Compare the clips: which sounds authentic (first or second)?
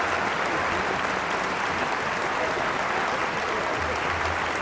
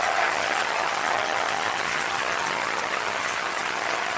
first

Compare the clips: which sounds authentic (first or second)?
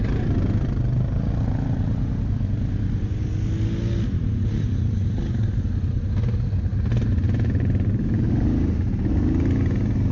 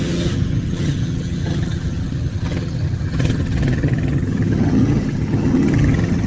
first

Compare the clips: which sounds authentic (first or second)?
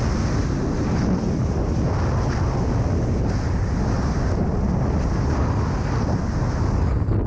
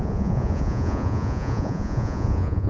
first